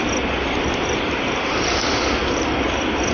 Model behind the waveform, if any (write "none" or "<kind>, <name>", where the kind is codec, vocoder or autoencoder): none